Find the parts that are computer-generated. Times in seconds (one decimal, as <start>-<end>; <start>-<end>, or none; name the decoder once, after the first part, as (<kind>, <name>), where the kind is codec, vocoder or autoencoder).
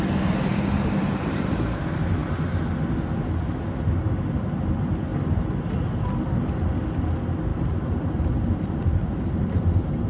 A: 0.5-1.8 (vocoder, BigVGAN v2); 7.5-9.5